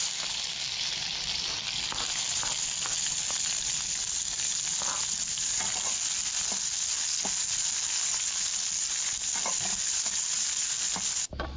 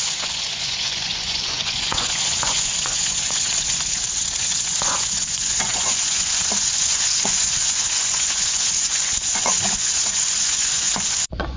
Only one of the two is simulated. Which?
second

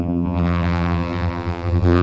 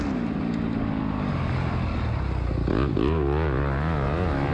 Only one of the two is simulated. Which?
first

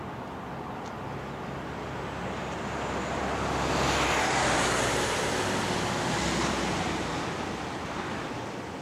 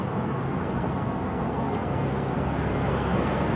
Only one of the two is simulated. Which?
second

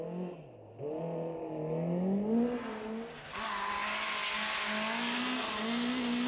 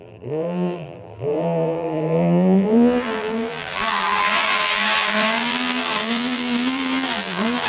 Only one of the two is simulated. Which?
second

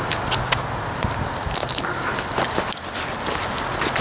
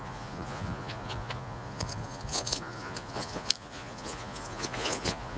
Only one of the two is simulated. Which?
second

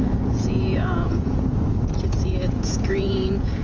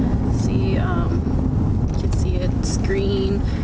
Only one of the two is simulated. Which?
first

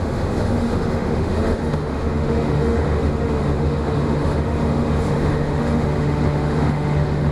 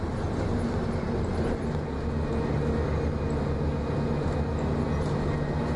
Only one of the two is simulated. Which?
first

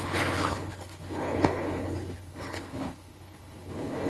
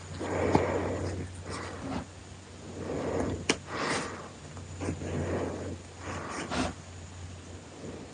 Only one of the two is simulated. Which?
first